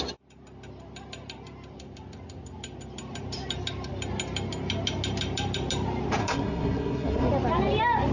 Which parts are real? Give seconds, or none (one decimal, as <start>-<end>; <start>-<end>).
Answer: 0.0-6.2; 7.3-8.1